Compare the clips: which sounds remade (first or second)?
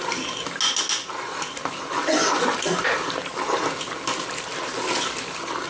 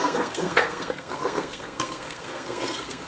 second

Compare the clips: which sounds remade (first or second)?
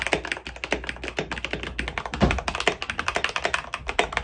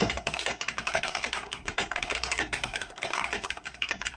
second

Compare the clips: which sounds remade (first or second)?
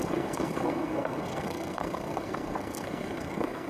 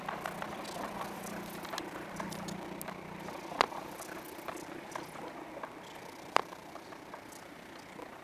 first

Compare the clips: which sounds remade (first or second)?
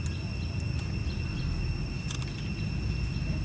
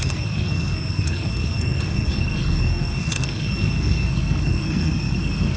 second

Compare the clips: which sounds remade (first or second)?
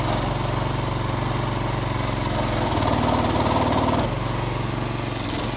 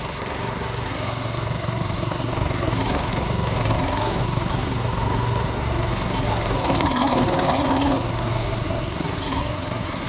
second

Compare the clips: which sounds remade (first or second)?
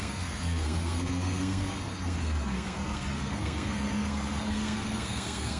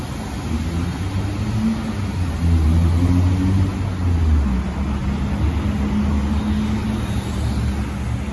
first